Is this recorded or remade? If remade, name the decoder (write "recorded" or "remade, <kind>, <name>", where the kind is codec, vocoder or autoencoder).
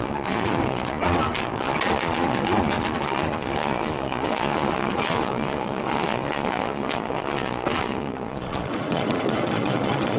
remade, vocoder, Vocos